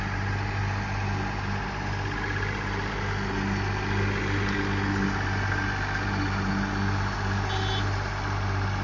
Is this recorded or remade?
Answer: recorded